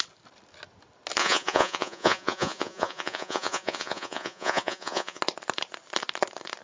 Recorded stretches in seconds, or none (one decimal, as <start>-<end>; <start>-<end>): 0.0-1.2; 5.2-6.6